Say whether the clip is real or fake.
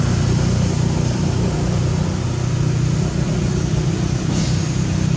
real